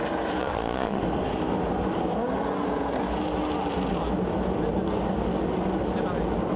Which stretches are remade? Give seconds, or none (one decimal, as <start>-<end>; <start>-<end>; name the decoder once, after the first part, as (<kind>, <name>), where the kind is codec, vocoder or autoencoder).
0.4-1.0 (vocoder, Vocos)